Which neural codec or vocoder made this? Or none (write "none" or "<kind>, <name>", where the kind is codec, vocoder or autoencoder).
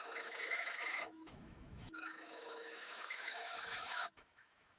autoencoder, DAC-VAE